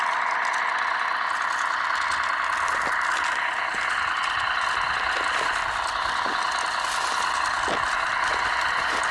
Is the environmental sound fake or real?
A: real